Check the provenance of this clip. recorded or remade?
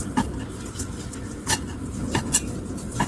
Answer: recorded